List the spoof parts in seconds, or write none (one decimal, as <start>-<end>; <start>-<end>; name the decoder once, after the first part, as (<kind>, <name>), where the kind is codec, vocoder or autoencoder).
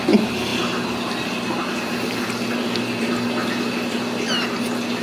none